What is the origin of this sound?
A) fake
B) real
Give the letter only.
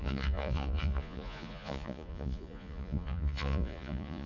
A